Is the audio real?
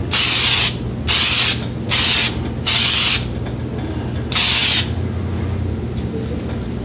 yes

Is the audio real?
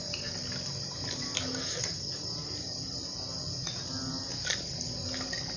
yes